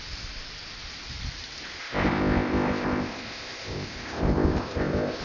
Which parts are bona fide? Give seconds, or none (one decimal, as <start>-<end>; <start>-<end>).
0.0-1.8